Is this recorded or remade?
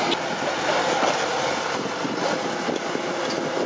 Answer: recorded